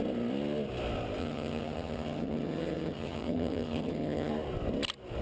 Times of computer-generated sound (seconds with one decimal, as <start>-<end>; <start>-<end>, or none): 1.2-4.3